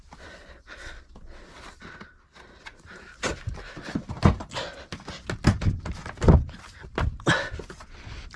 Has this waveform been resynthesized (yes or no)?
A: no